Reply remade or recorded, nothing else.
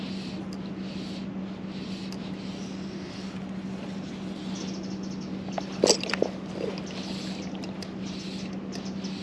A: recorded